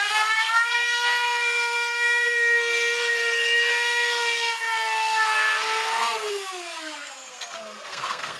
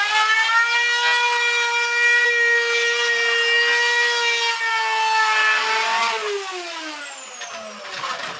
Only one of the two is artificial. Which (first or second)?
first